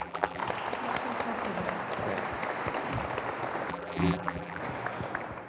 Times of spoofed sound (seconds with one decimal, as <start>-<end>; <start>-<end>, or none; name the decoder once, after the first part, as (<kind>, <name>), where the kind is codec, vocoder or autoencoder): 0.0-0.4 (vocoder, BigVGAN v2); 3.7-4.6